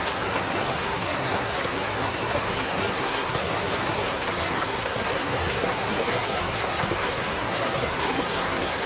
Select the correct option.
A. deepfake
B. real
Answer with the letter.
A